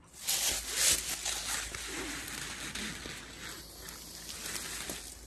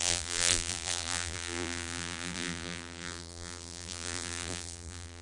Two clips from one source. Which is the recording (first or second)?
first